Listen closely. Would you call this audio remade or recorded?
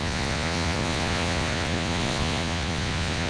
remade